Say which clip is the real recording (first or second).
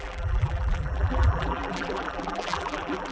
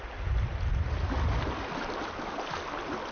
second